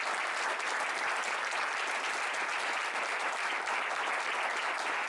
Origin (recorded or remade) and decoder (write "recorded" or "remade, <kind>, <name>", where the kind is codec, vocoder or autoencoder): recorded